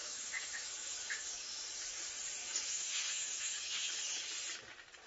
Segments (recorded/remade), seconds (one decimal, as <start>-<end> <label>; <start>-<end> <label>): 0.0-1.6 remade; 1.6-2.4 recorded; 2.4-4.2 remade; 4.2-5.1 recorded